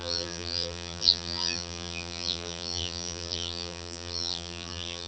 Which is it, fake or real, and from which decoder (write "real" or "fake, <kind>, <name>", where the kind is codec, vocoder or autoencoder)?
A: fake, vocoder, BigVGAN v2